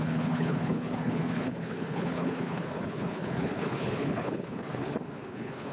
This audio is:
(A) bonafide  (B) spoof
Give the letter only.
B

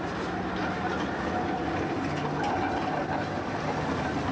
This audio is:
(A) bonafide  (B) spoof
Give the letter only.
A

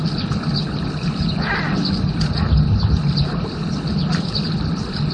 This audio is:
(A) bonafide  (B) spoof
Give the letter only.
A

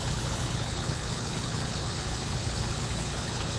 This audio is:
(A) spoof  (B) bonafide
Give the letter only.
A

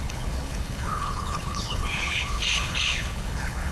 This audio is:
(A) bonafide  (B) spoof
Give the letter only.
B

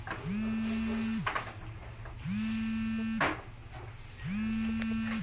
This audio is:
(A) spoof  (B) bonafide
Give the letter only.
B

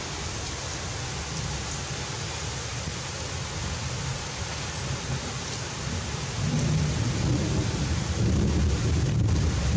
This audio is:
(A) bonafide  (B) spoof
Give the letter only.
A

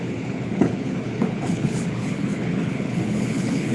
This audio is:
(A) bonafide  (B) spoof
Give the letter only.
B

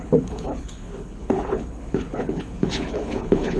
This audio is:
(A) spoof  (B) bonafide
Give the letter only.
A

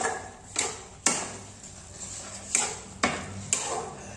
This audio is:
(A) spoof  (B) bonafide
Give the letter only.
B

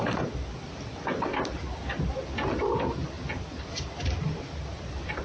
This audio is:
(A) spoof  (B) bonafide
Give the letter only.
B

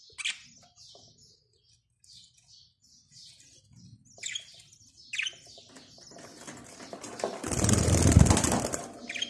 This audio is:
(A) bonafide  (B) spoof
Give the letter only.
A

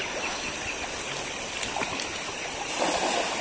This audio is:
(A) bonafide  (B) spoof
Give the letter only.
A